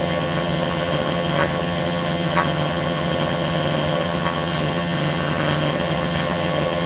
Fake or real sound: fake